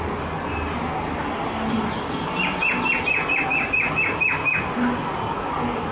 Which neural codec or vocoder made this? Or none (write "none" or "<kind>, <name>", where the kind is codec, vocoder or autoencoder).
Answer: none